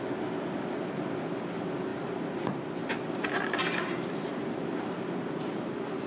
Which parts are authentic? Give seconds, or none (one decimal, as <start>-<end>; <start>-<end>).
0.0-6.1